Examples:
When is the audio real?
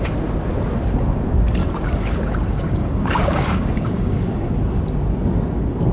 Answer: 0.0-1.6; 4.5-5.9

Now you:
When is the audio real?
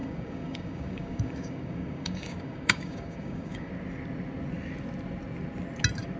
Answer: 3.7-6.2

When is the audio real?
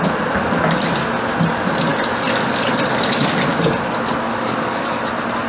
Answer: 0.0-4.3; 5.1-5.5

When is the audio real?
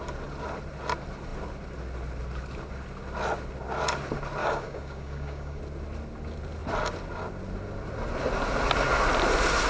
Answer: 0.0-4.4; 5.6-9.7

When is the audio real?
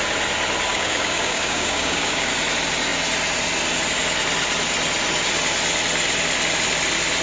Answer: 0.0-0.7; 2.3-7.2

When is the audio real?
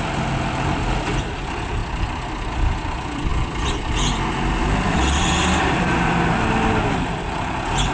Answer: 1.8-2.5; 3.3-4.6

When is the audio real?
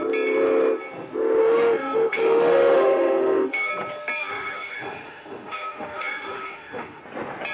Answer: 0.0-1.4; 3.7-4.2; 7.0-7.5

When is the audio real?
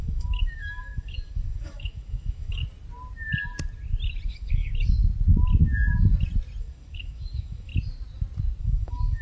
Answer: 2.6-4.3; 4.7-6.6; 7.7-8.6